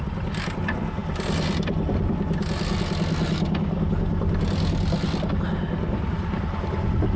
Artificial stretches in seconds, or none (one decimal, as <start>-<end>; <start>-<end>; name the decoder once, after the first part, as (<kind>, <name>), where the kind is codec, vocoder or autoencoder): none